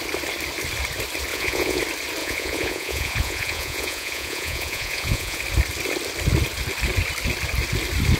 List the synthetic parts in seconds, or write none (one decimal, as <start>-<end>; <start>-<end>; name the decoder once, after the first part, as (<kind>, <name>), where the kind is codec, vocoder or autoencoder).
1.3-1.8 (vocoder, Vocos); 2.2-5.4